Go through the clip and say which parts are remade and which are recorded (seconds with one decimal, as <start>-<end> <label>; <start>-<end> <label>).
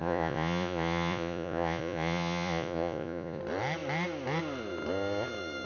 0.0-3.4 remade; 3.4-5.7 recorded